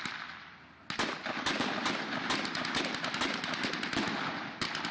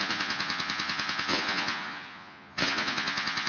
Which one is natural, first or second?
first